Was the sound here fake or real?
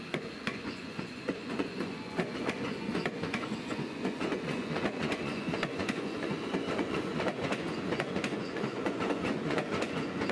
fake